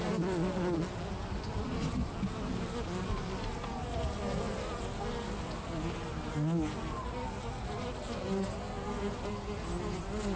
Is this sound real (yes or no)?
yes